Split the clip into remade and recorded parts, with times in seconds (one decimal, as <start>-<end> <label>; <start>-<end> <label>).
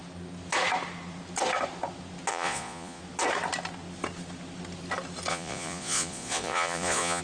0.0-2.3 recorded; 2.3-3.0 remade; 3.0-5.3 recorded; 5.3-7.2 remade